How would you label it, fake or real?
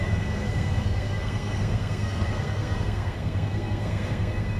fake